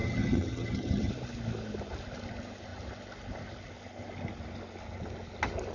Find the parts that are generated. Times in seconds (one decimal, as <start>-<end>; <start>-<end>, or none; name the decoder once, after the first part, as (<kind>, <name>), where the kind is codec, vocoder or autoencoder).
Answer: 0.0-1.1 (vocoder, HiFi-GAN)